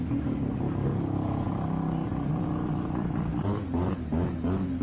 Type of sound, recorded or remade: recorded